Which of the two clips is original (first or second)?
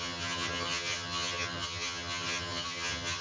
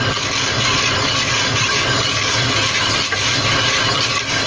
second